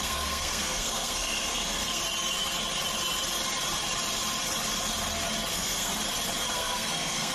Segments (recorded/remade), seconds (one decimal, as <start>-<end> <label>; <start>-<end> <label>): 0.0-2.0 remade; 2.0-5.5 recorded; 5.5-5.9 remade; 5.9-6.5 recorded; 6.5-7.3 remade